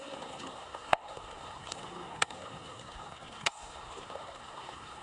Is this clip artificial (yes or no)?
yes